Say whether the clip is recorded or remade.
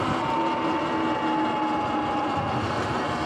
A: recorded